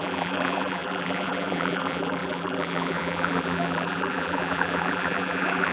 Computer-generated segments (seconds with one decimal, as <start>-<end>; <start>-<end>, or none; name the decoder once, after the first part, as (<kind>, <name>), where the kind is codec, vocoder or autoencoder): 0.0-5.7 (vocoder, BigVGAN v2)